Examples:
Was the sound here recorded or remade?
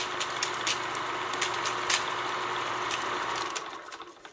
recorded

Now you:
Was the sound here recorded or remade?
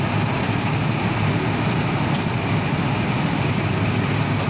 recorded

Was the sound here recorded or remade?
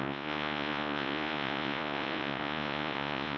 remade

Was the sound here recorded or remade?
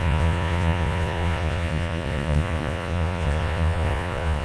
remade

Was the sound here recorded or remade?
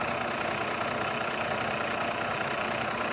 recorded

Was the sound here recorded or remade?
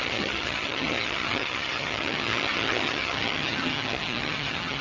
remade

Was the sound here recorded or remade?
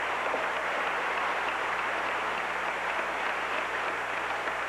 recorded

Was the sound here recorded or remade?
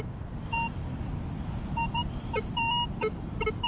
recorded